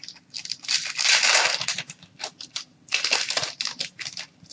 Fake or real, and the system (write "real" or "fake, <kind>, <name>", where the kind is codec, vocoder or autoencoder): real